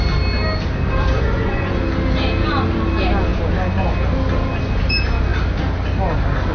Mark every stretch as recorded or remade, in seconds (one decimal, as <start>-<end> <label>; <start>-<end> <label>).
0.0-1.1 recorded; 1.1-1.8 remade; 1.8-6.5 recorded